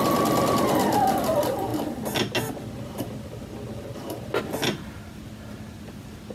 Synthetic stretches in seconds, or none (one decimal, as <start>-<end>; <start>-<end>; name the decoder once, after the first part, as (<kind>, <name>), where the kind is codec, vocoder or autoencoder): none